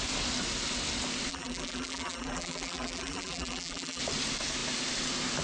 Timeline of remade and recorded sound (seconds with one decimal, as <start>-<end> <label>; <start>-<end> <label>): 0.0-1.3 recorded; 1.3-4.0 remade; 4.0-5.4 recorded